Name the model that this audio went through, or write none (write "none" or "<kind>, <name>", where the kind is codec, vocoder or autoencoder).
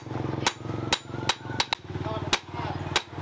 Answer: none